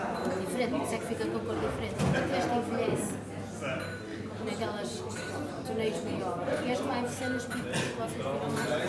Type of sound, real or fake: real